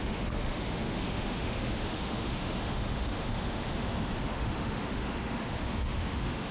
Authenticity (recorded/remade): remade